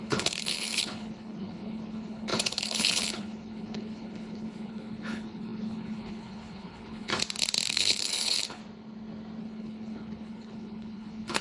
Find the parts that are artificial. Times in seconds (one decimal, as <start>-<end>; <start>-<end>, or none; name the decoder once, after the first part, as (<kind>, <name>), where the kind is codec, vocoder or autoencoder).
0.0-7.1 (codec, HILCodec); 7.7-8.6; 9.4-11.4